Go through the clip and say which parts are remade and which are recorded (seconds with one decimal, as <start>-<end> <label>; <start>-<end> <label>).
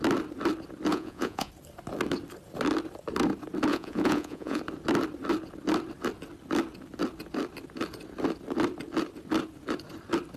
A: 0.0-0.9 recorded; 0.9-1.5 remade; 1.5-3.7 recorded; 3.7-4.6 remade; 4.6-10.4 recorded